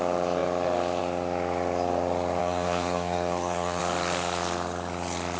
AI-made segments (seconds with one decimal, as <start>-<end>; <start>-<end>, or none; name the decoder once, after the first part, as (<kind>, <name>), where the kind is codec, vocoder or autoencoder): 2.4-3.8 (codec, SNAC)